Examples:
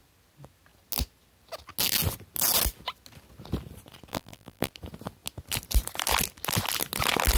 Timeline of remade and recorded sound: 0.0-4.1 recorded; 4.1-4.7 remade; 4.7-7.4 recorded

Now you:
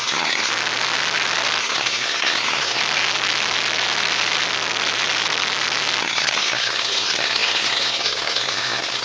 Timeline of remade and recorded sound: 0.0-0.5 remade; 0.5-1.6 recorded; 1.6-2.8 remade; 2.8-6.0 recorded; 6.0-9.0 remade

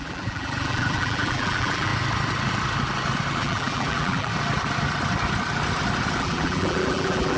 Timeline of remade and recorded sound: 0.0-1.9 remade; 1.9-3.4 recorded; 3.4-4.3 remade; 4.3-6.2 recorded; 6.2-7.4 remade

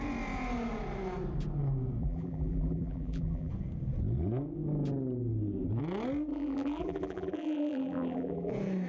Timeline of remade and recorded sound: 0.0-2.0 recorded; 2.0-3.5 remade; 3.5-6.3 recorded; 6.3-8.5 remade; 8.5-8.9 recorded